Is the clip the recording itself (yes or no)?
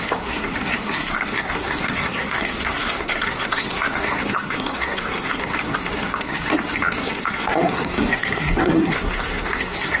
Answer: no